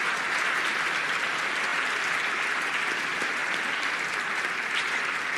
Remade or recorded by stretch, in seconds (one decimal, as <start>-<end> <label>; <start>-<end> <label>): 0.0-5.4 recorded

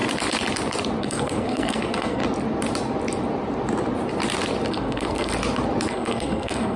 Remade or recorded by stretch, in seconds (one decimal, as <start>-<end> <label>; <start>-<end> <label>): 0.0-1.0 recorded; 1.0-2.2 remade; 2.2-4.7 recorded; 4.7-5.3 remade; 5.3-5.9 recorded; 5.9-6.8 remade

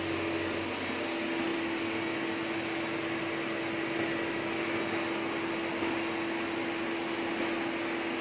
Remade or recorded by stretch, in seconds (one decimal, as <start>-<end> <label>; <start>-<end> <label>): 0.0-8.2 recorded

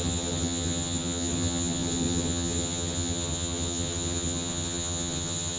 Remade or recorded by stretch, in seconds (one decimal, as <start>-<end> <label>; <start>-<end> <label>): 0.0-5.6 remade

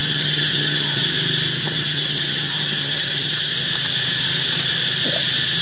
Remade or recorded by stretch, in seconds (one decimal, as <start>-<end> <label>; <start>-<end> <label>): 0.0-1.0 remade; 1.0-1.6 recorded; 1.6-3.5 remade; 3.5-5.6 recorded